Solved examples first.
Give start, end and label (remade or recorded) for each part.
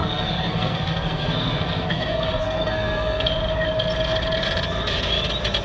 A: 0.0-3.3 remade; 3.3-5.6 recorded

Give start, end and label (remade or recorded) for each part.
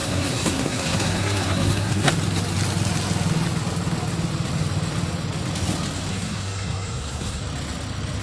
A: 0.0-2.1 remade; 2.1-6.1 recorded; 6.1-7.4 remade; 7.4-8.2 recorded